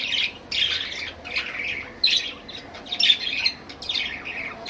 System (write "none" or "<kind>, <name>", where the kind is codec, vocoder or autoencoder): none